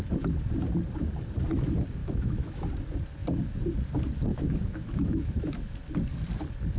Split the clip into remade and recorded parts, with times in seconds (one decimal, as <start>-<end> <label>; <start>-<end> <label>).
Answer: 0.0-2.0 recorded; 2.0-2.6 remade; 2.6-4.3 recorded; 4.3-5.8 remade; 5.8-6.8 recorded